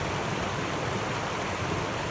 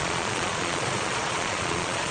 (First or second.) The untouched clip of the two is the first